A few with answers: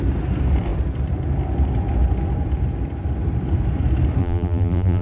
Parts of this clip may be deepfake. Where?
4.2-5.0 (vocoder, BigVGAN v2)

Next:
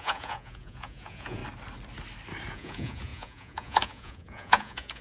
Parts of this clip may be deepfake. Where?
0.0-1.4 (vocoder, Vocos); 2.5-5.0

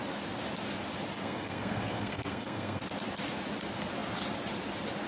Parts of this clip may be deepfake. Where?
1.2-2.8 (codec, SNAC)

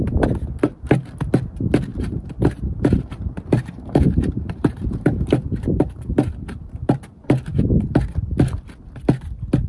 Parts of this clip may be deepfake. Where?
1.9-7.0 (vocoder, BigVGAN v2)

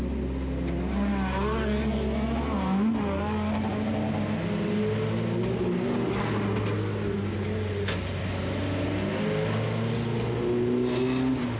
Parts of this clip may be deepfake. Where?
none

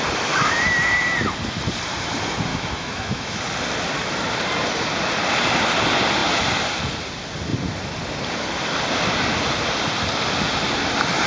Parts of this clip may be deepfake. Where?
2.5-3.4 (autoencoder, DAC-VAE)

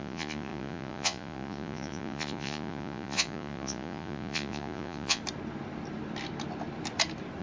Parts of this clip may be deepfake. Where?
0.0-5.2 (vocoder, Vocos)